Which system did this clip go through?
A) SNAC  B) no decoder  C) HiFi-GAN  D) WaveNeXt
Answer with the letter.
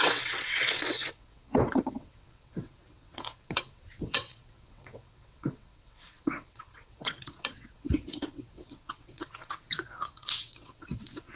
D